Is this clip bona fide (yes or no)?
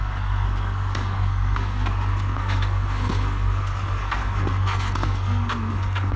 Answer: no